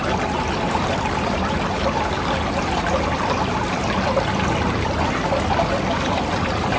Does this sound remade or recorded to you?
recorded